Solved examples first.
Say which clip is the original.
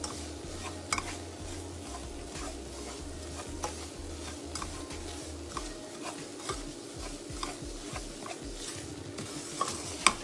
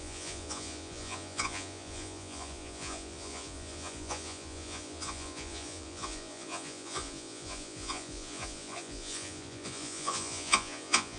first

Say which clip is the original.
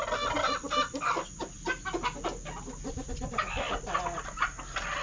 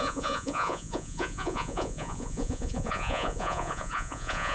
first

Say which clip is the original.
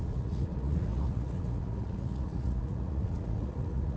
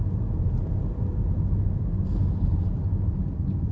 second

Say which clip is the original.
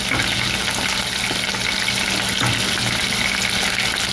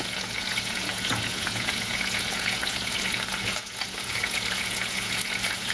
first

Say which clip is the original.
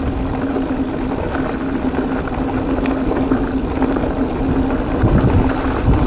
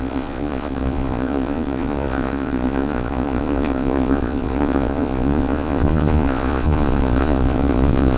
first